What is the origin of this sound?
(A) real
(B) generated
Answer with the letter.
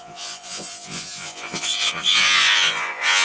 B